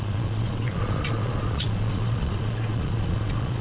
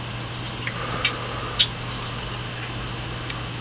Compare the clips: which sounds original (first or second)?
second